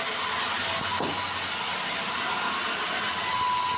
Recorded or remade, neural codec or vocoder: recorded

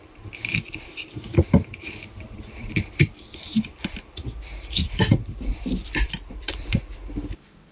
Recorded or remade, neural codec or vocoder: remade, vocoder, BigVGAN v2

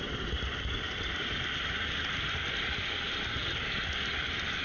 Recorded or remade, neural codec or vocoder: recorded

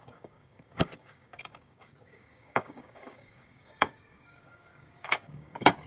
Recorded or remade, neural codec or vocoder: remade, codec, DAC